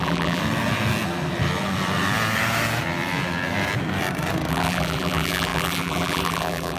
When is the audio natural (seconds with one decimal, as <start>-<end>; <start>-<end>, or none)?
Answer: 0.4-4.5